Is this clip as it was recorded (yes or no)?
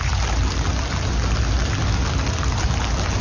yes